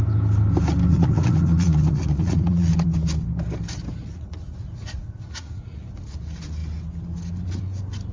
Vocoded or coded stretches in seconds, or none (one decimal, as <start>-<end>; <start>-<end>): 0.9-2.7; 4.0-5.8

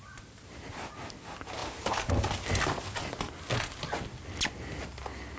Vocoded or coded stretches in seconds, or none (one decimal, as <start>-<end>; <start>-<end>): none

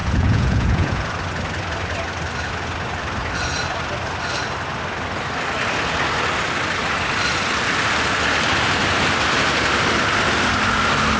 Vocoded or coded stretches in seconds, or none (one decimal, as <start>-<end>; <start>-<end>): 0.0-1.1

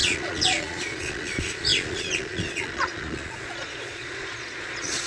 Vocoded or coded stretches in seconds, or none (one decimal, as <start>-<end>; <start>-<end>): 0.0-5.1

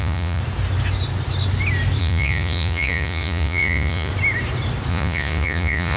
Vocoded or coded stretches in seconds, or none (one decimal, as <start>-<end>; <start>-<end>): 0.0-0.4; 2.0-4.1; 4.9-6.0

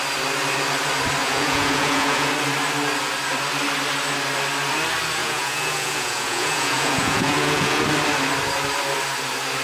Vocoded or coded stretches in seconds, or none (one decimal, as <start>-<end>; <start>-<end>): 1.2-2.3; 5.2-7.8

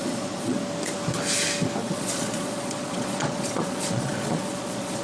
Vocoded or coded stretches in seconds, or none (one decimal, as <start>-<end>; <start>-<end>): 0.0-0.6; 1.8-5.0